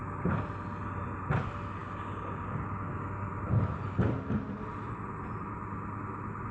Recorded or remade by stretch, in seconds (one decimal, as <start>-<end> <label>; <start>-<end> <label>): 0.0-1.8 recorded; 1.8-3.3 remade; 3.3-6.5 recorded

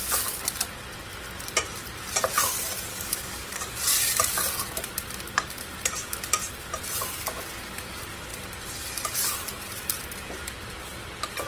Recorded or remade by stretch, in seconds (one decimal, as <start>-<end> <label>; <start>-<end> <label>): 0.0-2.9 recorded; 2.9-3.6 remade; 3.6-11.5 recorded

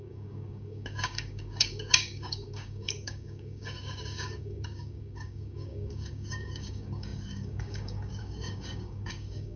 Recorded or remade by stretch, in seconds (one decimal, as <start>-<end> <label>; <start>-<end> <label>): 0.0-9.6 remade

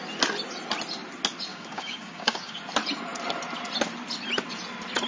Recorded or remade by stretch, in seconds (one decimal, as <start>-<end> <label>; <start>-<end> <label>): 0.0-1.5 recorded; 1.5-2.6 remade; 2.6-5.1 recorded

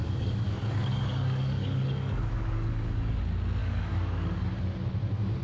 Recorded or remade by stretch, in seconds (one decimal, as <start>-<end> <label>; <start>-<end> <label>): 0.0-3.2 remade; 3.2-3.6 recorded; 3.6-4.6 remade; 4.6-5.4 recorded